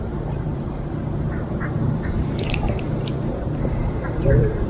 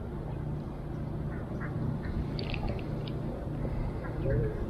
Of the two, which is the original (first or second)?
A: second